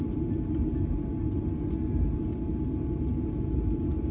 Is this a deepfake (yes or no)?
no